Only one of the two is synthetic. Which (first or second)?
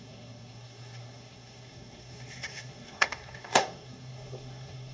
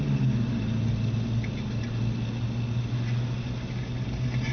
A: first